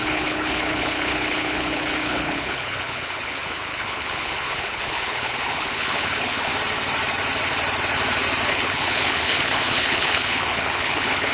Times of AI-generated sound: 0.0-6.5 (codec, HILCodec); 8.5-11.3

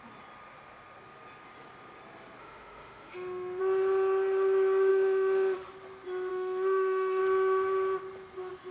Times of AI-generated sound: 2.4-3.6 (autoencoder, DAC-VAE); 4.9-5.7; 6.3-7.2

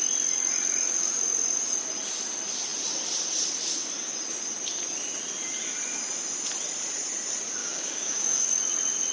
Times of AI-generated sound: 7.6-8.6 (codec, DAC)

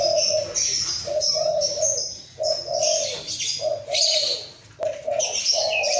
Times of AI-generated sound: none

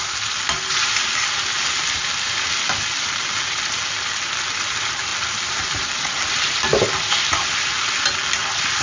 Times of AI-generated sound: none

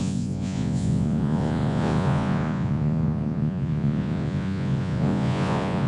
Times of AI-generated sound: 0.0-5.9 (vocoder, Vocos)

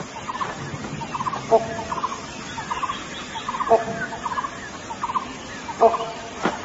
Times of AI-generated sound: none

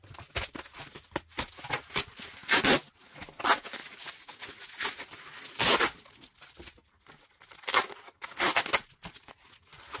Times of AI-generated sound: none